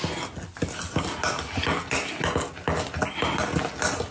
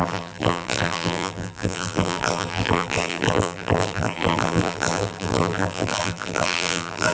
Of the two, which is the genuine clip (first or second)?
first